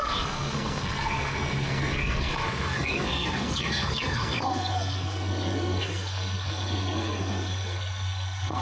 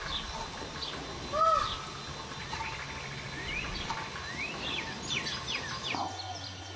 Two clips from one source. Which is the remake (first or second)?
first